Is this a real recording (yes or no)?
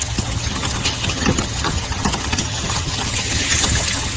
no